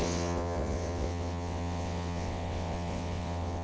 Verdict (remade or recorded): remade